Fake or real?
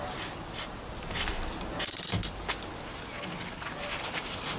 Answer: real